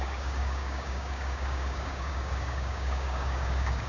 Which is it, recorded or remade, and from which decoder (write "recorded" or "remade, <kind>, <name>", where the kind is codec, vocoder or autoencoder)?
remade, codec, DAC